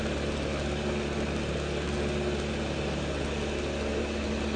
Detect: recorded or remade recorded